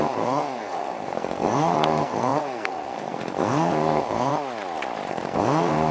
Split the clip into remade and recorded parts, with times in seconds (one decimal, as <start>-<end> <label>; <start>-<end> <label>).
0.0-4.3 remade; 4.3-5.1 recorded; 5.1-5.9 remade